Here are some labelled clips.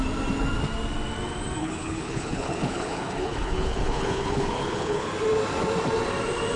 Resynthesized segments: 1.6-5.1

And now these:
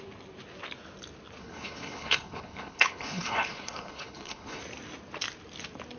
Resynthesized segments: 1.4-4.6

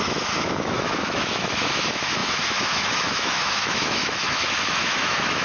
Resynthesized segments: 0.0-5.4

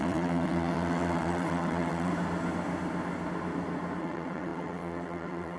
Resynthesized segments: 0.0-2.1; 4.0-5.6

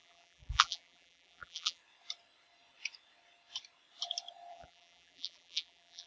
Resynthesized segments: 0.0-1.8; 4.5-6.1

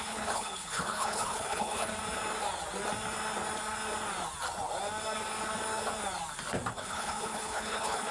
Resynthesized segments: 0.0-1.9; 6.7-8.1

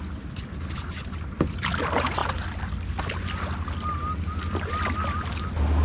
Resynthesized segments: none